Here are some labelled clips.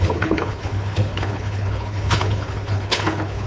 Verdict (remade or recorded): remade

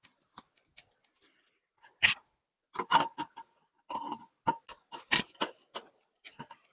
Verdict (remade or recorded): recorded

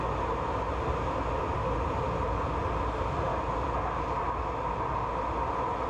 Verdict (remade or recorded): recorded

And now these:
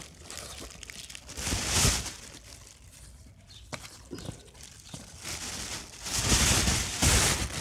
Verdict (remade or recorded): recorded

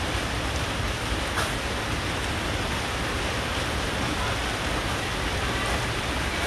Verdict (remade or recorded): recorded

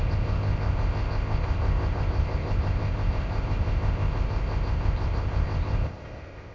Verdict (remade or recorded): remade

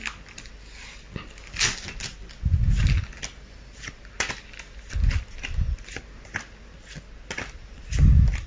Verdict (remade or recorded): recorded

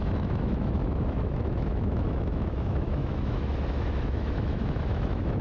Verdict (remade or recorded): remade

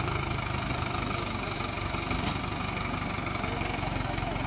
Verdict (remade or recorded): recorded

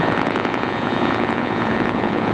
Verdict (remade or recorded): remade